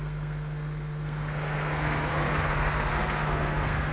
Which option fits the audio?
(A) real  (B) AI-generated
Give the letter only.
B